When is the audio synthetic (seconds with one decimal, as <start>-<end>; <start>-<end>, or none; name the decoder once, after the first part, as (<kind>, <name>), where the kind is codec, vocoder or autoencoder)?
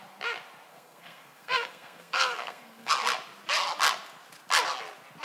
0.7-2.9 (codec, SNAC)